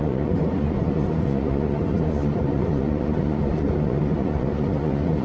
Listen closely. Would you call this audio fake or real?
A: fake